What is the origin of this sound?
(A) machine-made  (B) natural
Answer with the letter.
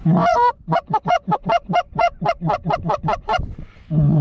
A